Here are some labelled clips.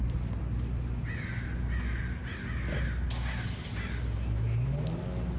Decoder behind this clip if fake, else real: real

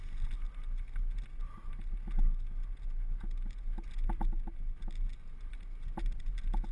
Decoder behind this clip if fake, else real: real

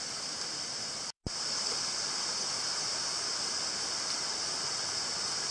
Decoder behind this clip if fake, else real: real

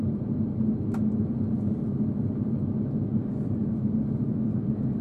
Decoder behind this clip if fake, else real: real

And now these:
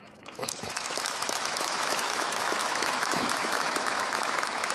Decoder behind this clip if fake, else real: fake, autoencoder, DAC-VAE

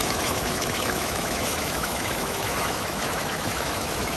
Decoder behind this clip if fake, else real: fake, autoencoder, DAC-VAE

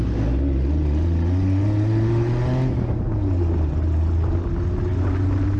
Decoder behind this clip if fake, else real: real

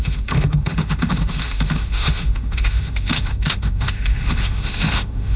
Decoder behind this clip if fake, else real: fake, autoencoder, DAC-VAE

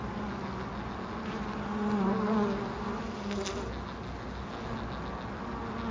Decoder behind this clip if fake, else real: real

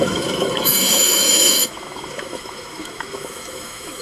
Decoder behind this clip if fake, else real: fake, autoencoder, DAC-VAE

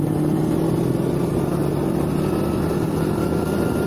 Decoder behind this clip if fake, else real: real